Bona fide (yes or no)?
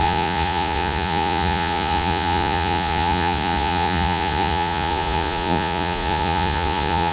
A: no